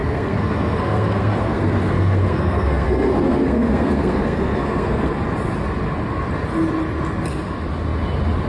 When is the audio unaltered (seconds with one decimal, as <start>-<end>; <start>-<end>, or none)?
5.1-8.5